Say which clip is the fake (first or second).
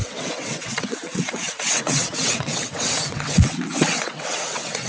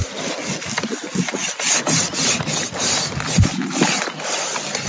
first